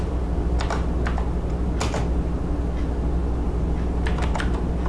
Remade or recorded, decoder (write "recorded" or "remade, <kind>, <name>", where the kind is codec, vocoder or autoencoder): recorded